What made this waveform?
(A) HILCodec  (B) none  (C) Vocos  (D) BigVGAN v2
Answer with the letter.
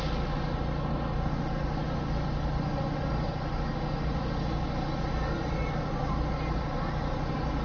B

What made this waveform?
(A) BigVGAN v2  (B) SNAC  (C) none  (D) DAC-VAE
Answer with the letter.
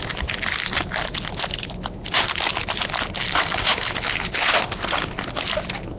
C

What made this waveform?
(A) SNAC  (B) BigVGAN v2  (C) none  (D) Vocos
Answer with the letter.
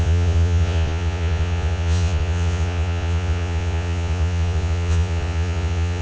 D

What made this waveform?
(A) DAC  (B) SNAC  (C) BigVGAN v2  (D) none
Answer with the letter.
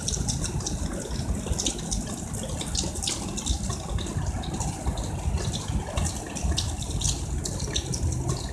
D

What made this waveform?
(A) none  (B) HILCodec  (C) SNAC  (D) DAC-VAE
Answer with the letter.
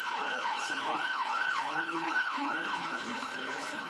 B